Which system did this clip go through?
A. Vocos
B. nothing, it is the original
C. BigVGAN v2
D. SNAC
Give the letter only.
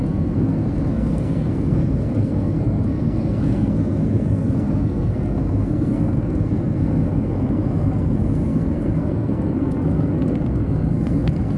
D